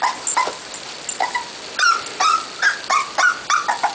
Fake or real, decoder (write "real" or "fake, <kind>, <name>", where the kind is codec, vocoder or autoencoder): real